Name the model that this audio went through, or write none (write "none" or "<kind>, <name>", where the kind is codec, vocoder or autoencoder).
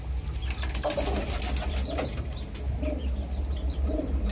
none